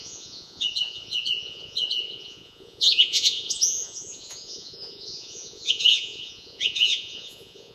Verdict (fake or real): fake